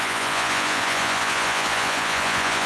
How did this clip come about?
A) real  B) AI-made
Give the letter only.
B